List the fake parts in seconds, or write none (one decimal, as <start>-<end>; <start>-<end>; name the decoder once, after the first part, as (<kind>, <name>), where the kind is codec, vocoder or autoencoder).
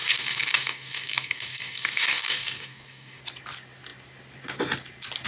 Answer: 0.0-3.2 (codec, DAC)